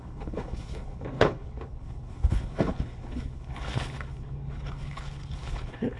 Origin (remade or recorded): remade